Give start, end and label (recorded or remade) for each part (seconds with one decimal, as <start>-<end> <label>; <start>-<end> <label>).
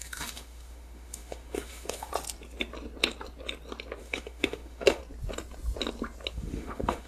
0.0-2.1 remade; 2.1-4.0 recorded; 4.0-5.0 remade; 5.0-6.3 recorded; 6.3-7.1 remade